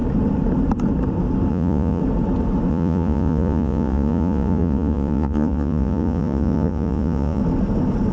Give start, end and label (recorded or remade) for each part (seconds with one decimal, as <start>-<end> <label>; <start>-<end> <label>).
0.0-1.5 recorded; 1.5-2.0 remade; 2.0-2.7 recorded; 2.7-7.4 remade; 7.4-8.1 recorded